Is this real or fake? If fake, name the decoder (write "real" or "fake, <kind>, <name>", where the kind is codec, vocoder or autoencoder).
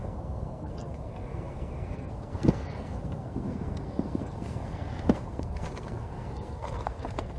fake, codec, SNAC